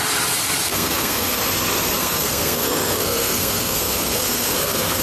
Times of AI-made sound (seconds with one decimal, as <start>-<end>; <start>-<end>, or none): 0.7-1.4; 2.0-5.0